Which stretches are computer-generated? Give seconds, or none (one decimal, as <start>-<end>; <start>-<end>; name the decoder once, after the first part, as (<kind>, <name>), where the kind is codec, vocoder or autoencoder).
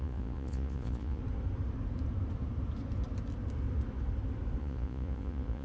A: 0.0-1.2 (vocoder, Vocos); 4.6-5.6